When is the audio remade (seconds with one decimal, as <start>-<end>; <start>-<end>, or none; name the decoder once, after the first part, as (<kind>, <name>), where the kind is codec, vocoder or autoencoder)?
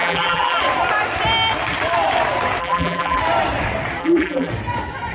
0.0-0.6 (vocoder, BigVGAN v2); 2.6-3.2; 4.0-4.5